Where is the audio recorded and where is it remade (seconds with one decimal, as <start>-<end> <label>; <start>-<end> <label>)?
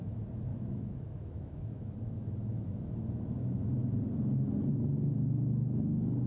0.0-0.5 recorded; 0.5-2.9 remade; 2.9-6.3 recorded